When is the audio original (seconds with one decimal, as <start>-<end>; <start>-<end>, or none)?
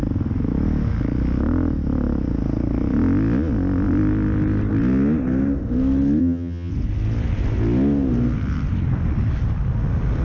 0.0-6.2; 6.7-10.2